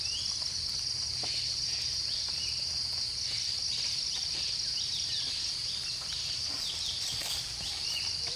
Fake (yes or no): yes